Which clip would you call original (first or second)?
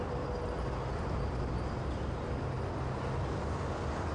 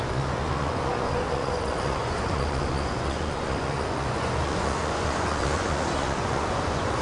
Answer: first